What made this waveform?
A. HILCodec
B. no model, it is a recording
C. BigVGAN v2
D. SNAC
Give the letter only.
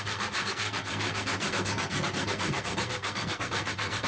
D